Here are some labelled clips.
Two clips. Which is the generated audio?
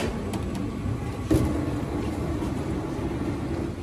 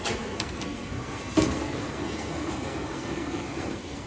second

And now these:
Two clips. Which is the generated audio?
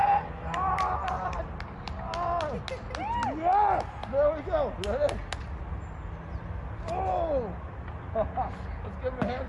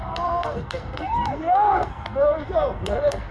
second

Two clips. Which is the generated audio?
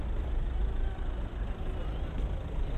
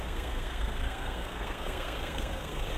second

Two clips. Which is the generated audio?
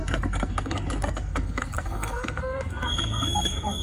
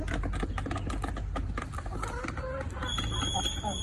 first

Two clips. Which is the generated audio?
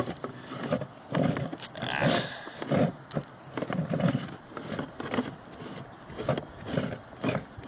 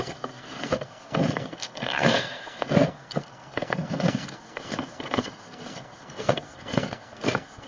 second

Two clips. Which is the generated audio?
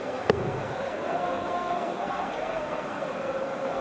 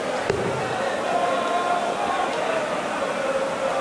first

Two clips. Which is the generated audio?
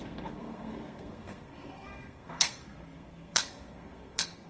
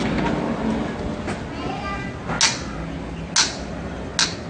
first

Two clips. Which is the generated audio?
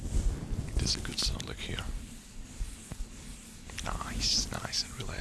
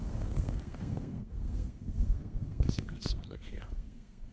second